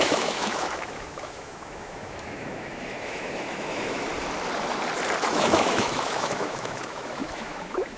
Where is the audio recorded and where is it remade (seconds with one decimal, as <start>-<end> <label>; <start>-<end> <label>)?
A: 0.0-4.1 remade; 4.1-5.2 recorded; 5.2-8.0 remade